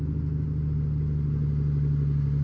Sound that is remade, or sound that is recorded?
recorded